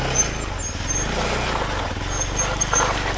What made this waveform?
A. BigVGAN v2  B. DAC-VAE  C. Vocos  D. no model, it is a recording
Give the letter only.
D